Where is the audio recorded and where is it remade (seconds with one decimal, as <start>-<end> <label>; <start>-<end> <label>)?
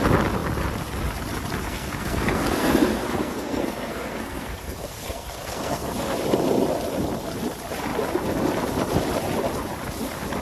0.0-1.6 recorded; 1.6-6.2 remade; 6.2-10.4 recorded